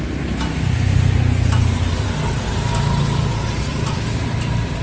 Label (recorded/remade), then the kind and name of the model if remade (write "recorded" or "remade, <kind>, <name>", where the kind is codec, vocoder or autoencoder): recorded